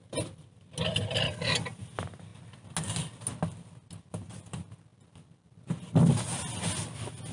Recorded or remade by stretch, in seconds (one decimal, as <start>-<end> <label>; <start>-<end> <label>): 0.0-7.3 recorded